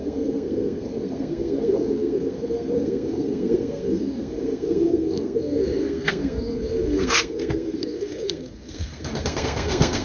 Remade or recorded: remade